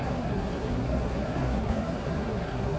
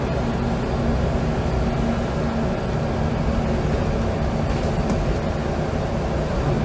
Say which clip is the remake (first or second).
first